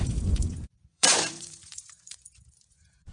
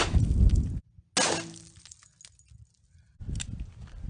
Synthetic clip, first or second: first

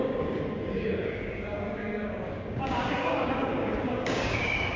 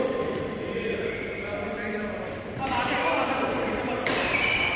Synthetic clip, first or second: first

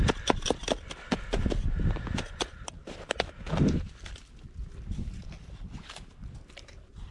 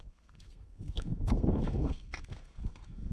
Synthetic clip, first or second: second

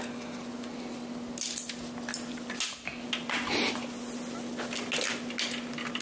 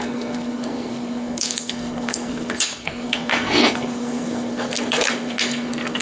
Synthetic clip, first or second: second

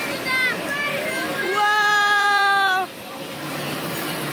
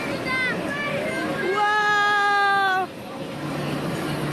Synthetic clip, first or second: first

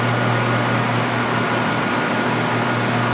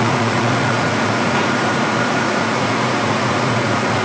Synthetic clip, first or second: second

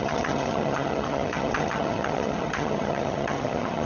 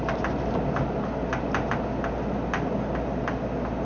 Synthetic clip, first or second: first